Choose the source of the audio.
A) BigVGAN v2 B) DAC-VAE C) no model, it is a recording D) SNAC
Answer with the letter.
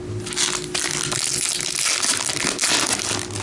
C